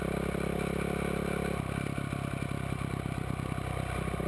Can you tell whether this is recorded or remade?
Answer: recorded